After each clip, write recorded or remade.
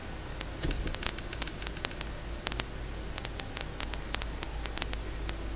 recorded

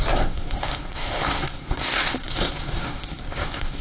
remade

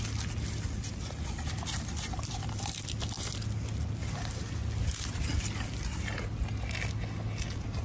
recorded